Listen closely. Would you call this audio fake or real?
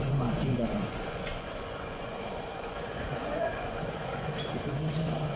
fake